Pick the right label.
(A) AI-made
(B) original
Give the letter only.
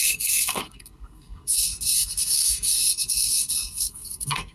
A